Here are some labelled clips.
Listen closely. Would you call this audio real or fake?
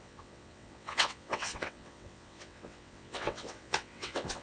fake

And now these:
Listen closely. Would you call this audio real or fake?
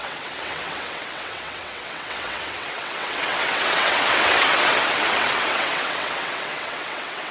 fake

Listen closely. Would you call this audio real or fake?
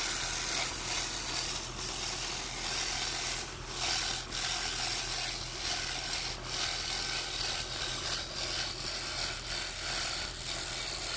real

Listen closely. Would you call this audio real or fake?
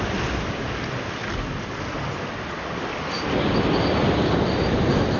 real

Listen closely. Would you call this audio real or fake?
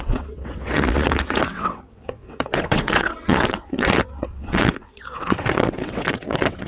fake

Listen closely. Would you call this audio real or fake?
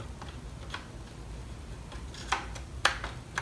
real